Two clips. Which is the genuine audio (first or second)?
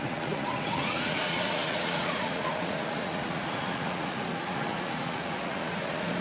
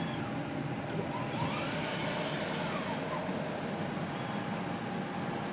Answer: second